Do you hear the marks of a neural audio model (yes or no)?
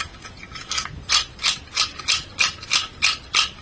no